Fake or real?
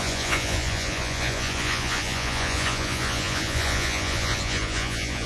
fake